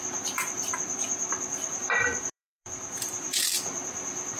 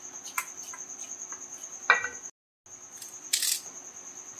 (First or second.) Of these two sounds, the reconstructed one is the first